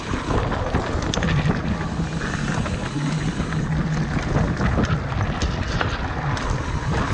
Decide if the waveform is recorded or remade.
recorded